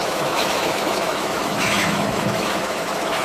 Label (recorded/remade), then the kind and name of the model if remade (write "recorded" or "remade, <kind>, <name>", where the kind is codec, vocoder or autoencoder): remade, autoencoder, DAC-VAE